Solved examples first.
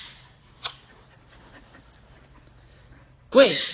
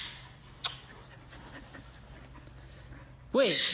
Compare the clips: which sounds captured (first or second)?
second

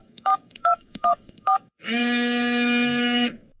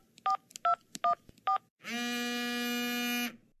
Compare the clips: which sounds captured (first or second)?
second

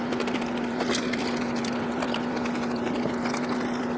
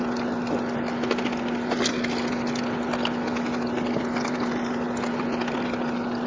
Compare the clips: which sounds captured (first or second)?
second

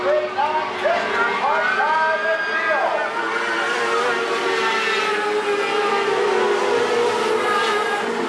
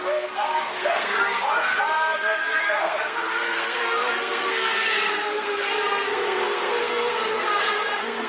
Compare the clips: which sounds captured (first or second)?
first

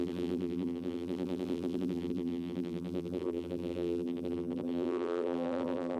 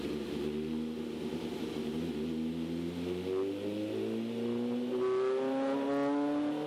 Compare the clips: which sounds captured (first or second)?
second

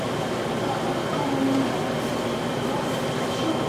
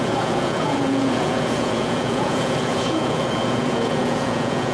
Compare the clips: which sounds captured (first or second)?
first